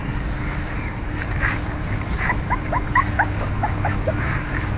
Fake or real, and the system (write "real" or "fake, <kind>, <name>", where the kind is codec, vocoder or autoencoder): fake, codec, DAC